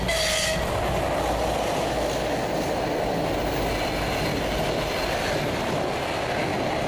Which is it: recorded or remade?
recorded